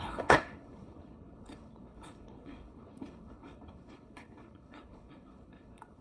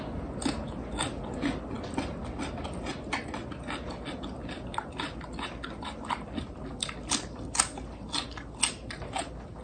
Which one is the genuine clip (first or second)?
second